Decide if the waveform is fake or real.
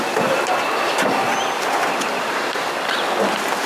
real